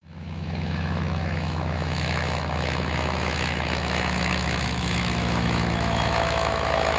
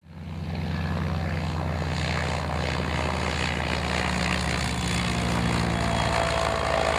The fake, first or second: first